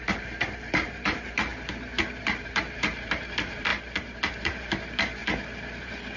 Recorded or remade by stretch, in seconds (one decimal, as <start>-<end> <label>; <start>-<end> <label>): 0.0-1.5 remade; 1.5-2.2 recorded; 2.2-3.7 remade; 3.7-4.3 recorded; 4.3-5.2 remade; 5.2-5.8 recorded; 5.8-6.2 remade